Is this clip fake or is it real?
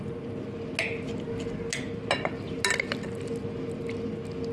real